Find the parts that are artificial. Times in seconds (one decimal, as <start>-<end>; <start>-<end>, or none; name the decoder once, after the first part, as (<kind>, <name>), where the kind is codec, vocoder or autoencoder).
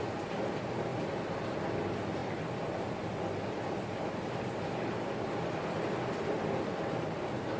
none